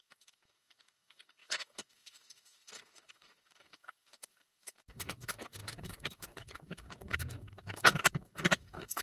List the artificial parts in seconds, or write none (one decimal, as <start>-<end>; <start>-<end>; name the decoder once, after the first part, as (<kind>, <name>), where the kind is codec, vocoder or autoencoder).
0.0-9.0 (codec, DAC)